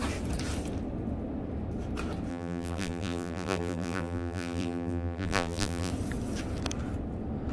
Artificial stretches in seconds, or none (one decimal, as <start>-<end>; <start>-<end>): 2.3-5.9